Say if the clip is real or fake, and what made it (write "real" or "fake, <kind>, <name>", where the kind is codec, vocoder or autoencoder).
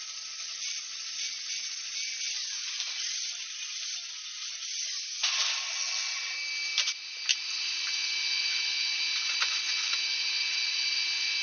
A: real